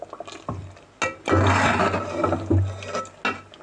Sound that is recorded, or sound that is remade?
recorded